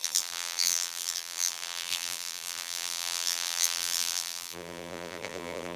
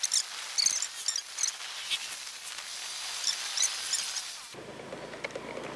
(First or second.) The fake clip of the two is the first